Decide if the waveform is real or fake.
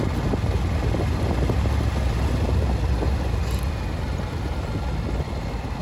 real